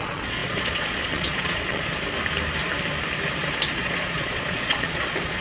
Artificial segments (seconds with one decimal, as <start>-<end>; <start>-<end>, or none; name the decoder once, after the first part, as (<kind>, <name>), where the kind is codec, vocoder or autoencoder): 0.0-1.9 (vocoder, Vocos); 3.7-5.4